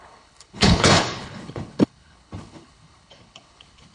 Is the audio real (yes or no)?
no